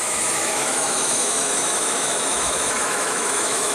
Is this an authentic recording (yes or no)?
no